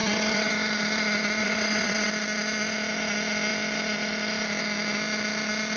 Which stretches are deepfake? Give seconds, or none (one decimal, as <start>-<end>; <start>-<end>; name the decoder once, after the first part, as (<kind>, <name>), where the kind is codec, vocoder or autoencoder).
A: 0.0-0.5 (vocoder, WaveNeXt); 1.4-2.1